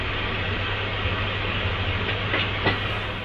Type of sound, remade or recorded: recorded